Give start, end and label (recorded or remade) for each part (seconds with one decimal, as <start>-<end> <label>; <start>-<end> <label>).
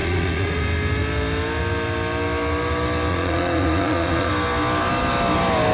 0.0-0.6 remade; 0.6-3.1 recorded; 3.1-4.3 remade; 4.3-5.7 recorded